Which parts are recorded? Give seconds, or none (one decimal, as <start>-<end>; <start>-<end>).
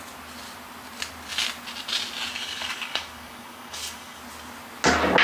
0.0-2.3; 4.2-5.2